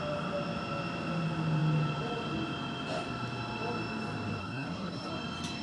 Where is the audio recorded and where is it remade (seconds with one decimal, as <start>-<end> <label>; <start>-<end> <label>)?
0.0-4.4 recorded; 4.4-5.1 remade; 5.1-5.6 recorded